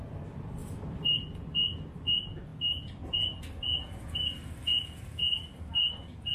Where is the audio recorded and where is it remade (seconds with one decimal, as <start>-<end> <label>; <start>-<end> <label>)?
0.0-0.6 recorded; 0.6-1.2 remade; 1.2-5.3 recorded; 5.3-6.3 remade